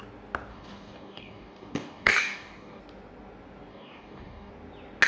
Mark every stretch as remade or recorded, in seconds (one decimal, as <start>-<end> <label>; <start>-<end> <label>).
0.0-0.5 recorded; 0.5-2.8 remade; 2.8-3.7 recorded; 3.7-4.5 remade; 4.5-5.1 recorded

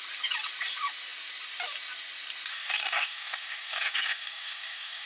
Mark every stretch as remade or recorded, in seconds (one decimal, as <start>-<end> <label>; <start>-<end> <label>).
0.0-2.5 recorded; 2.5-5.1 remade

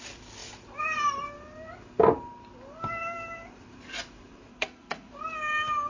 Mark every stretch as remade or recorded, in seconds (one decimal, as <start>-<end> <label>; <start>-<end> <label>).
0.0-4.5 recorded; 4.5-5.1 remade; 5.1-5.9 recorded

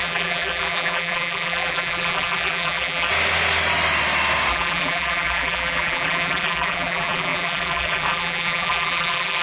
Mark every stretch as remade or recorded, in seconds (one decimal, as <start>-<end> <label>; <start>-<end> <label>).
0.0-3.1 remade; 3.1-4.5 recorded; 4.5-9.4 remade

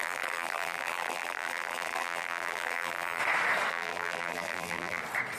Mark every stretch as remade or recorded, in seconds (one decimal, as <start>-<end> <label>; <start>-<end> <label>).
0.0-3.2 remade; 3.2-3.7 recorded; 3.7-5.0 remade; 5.0-5.4 recorded